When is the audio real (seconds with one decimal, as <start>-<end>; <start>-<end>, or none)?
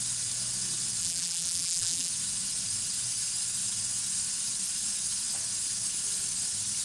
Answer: 0.0-1.0; 2.1-6.8